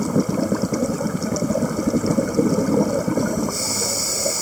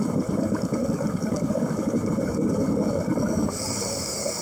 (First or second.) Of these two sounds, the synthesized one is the second